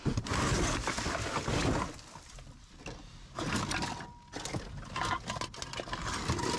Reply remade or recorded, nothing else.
recorded